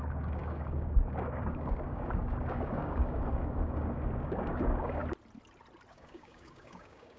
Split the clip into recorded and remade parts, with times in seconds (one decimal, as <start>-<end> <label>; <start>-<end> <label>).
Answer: 0.0-5.0 remade; 5.0-5.9 recorded; 5.9-7.2 remade